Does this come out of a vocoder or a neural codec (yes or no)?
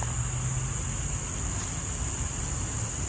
no